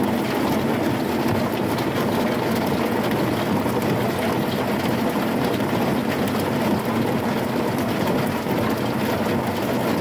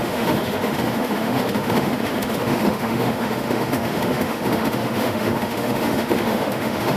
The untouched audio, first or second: first